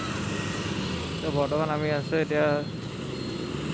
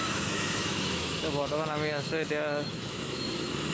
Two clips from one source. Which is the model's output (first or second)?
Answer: second